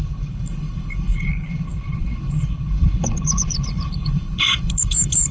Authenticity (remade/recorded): remade